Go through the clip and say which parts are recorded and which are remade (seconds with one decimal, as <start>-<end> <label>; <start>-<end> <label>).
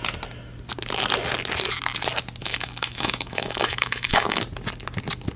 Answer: 0.0-2.4 recorded; 2.4-4.4 remade; 4.4-5.4 recorded